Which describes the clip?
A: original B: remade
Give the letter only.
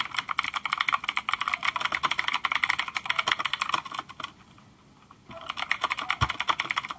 A